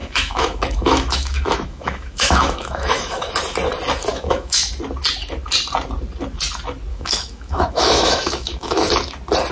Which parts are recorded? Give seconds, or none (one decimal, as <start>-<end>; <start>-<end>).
3.3-4.1; 4.7-6.9; 8.9-9.5